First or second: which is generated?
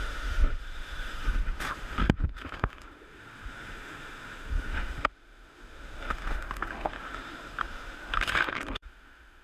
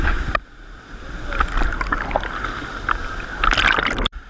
first